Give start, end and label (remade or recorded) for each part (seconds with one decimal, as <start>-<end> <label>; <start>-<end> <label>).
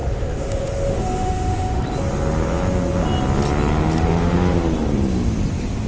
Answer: 0.0-1.8 remade; 1.8-5.9 recorded